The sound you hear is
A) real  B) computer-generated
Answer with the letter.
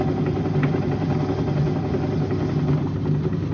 A